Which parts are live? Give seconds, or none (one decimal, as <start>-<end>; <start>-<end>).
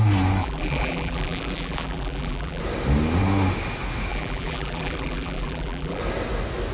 0.0-0.4; 2.6-4.1; 6.0-6.7